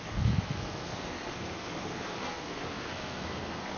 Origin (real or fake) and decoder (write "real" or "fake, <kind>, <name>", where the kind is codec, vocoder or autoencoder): fake, codec, SNAC